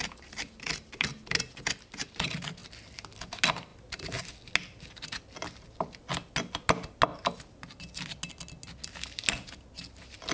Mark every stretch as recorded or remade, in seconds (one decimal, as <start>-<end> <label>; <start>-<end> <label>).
0.0-10.3 recorded